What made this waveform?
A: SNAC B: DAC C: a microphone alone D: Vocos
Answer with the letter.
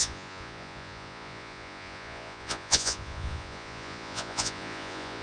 D